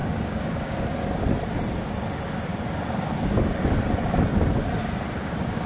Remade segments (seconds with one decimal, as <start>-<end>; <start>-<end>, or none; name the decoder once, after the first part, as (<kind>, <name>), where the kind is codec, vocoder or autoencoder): 0.0-0.8 (codec, DAC)